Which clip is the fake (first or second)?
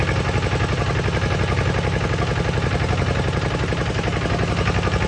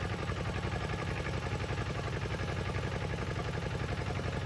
second